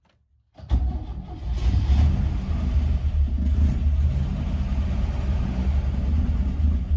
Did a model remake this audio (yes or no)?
no